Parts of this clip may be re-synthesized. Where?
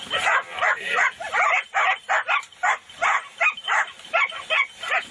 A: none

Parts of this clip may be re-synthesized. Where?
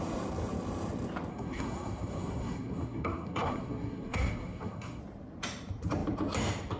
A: 1.3-5.0 (codec, SNAC)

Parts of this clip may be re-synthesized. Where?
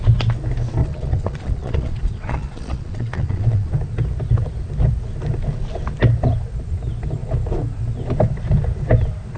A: 0.8-3.7 (vocoder, Vocos)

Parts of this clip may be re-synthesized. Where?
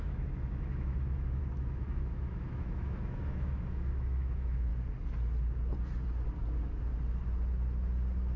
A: 0.0-4.7 (autoencoder, DAC-VAE)